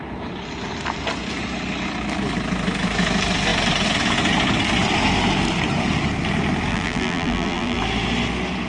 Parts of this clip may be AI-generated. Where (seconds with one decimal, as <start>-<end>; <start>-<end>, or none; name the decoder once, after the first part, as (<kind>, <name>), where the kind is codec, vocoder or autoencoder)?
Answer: 6.7-7.8 (vocoder, BigVGAN v2)